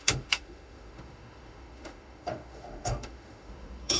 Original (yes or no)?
no